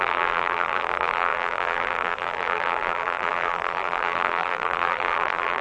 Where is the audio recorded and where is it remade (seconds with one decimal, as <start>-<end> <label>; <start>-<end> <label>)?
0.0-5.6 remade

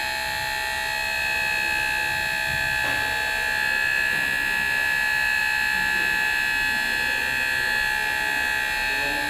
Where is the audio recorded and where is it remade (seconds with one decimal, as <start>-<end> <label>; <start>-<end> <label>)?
0.0-9.3 recorded

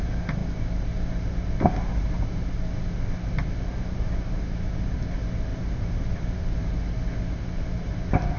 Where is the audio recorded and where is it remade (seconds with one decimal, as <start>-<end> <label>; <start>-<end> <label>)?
0.0-3.7 recorded; 3.7-5.1 remade; 5.1-5.5 recorded; 5.5-6.7 remade; 6.7-8.4 recorded

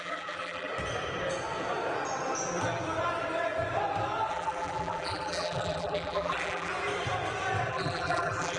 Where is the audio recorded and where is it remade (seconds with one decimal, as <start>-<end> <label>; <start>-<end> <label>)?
0.0-0.7 remade; 0.7-4.3 recorded; 4.3-6.7 remade; 6.7-7.7 recorded; 7.7-8.6 remade